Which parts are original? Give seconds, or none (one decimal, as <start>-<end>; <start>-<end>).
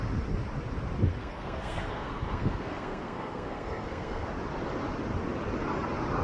0.0-1.2; 4.3-6.2